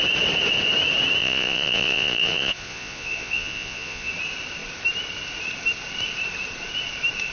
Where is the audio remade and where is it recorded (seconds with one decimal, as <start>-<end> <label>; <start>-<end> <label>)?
0.0-1.2 recorded; 1.2-4.1 remade; 4.1-7.3 recorded